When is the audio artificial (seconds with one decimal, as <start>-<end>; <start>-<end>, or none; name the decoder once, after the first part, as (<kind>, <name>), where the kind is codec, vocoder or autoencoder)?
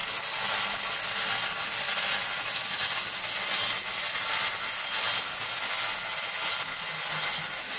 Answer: none